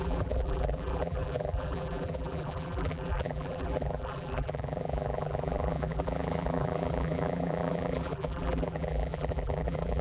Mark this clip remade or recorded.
remade